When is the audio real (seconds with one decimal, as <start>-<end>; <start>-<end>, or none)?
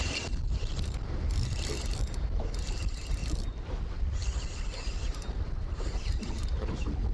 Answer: none